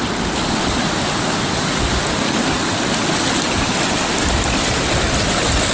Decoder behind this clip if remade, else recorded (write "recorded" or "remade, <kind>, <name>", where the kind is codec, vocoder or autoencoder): recorded